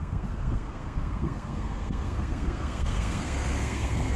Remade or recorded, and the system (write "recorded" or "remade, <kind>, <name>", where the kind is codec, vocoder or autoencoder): remade, codec, SNAC